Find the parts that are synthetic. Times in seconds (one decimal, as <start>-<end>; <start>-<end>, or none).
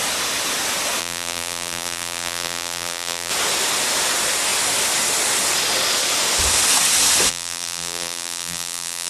1.0-3.3; 7.3-9.1